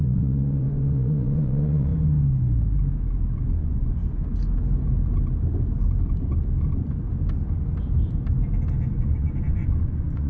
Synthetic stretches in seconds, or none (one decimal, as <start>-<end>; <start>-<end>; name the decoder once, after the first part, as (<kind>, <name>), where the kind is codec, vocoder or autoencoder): 0.0-1.9 (vocoder, Vocos); 3.6-4.0; 8.9-10.3